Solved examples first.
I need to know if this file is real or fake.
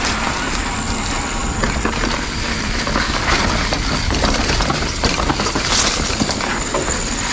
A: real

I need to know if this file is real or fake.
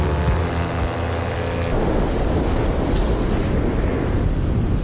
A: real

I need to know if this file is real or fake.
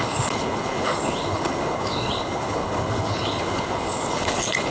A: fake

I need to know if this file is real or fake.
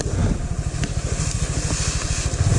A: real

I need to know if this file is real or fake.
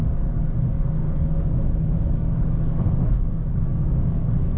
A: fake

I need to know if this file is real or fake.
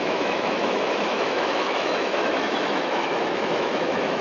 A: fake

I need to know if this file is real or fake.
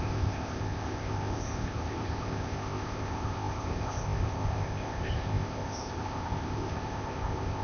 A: fake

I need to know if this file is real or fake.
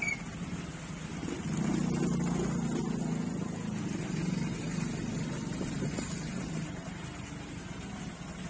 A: real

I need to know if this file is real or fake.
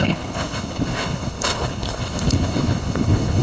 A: fake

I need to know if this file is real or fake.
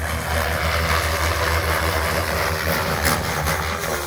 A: real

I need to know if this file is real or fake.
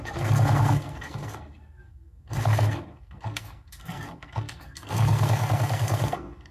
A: fake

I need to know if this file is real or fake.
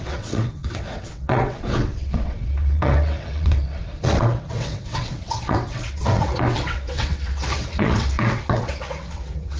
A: fake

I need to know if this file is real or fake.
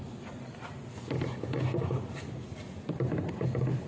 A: real